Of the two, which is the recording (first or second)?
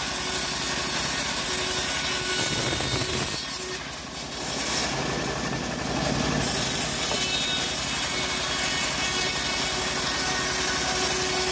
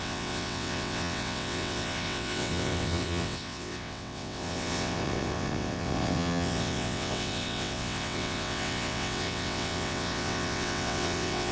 first